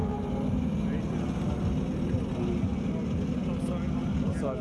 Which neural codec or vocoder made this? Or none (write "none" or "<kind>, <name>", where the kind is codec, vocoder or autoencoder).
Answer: none